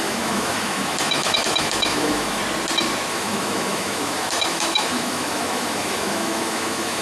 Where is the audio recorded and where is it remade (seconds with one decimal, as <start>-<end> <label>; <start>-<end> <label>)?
0.0-2.4 remade; 2.4-3.1 recorded; 3.1-7.0 remade